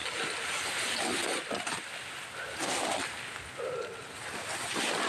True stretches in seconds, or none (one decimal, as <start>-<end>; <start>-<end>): 0.0-5.1